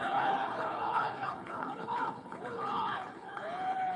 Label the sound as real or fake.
fake